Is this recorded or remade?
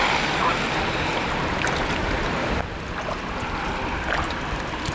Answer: recorded